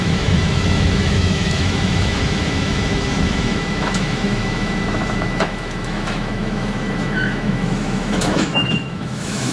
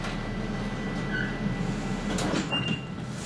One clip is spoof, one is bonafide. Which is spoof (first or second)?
first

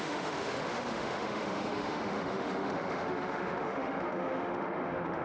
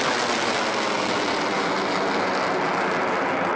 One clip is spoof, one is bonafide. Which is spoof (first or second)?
first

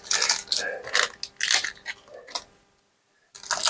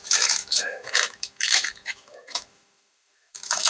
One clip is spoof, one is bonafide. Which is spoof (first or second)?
second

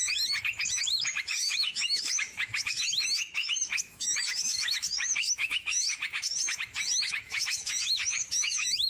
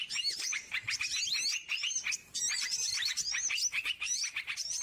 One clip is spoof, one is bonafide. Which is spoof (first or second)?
first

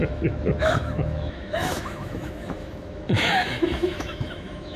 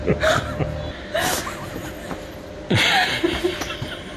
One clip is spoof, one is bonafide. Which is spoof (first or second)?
first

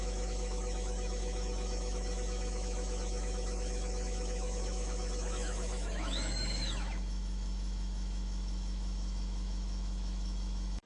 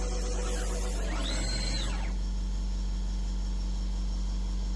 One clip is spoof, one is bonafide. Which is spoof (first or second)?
first